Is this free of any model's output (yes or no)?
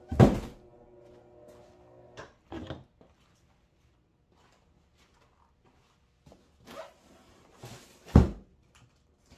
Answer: yes